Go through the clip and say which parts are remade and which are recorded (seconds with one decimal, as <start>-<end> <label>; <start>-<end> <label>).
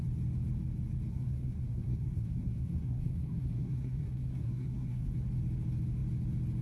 0.0-1.1 recorded; 1.1-5.1 remade; 5.1-6.6 recorded